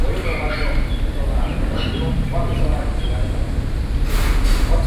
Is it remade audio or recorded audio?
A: recorded